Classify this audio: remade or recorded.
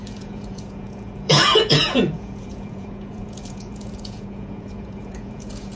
remade